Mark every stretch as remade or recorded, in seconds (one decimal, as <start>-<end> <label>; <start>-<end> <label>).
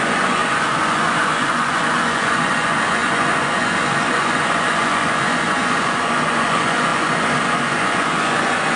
0.0-8.8 remade